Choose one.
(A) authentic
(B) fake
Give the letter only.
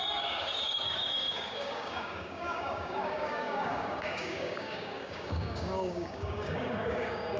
B